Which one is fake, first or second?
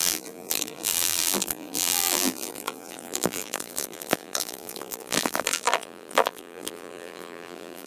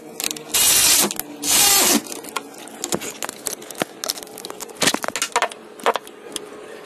first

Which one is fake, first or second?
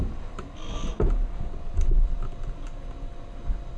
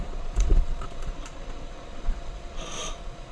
second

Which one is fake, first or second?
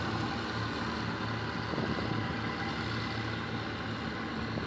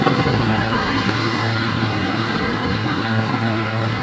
second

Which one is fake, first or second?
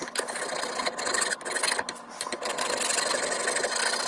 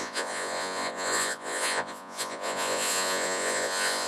second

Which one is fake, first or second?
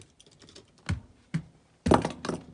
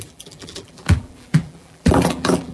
second